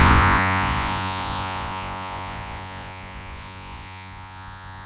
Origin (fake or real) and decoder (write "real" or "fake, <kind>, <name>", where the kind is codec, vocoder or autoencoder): fake, vocoder, Vocos